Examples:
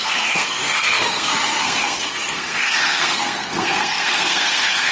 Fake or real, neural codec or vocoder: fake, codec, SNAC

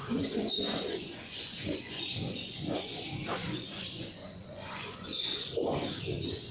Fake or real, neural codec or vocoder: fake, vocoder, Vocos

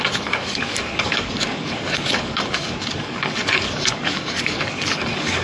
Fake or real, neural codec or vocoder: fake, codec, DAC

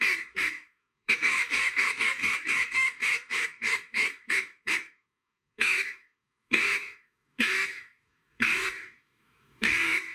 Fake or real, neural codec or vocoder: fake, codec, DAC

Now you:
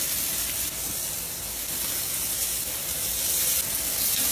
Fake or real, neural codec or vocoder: real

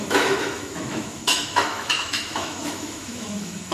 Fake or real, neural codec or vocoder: fake, autoencoder, DAC-VAE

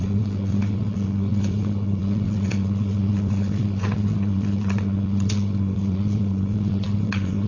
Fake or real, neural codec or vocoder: fake, vocoder, WaveNeXt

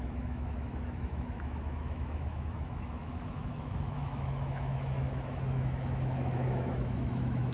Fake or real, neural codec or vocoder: fake, autoencoder, DAC-VAE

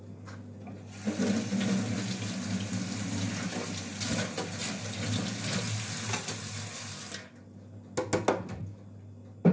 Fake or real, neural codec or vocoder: real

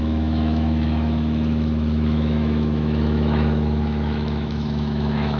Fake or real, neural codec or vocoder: fake, autoencoder, DAC-VAE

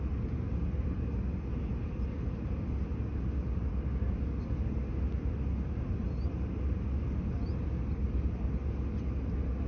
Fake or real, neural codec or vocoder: real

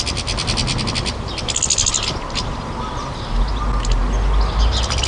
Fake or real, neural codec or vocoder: real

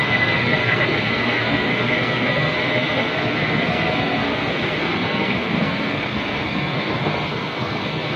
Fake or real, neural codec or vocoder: fake, codec, SNAC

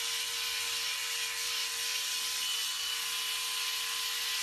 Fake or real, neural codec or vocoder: real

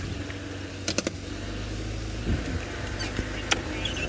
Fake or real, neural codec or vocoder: real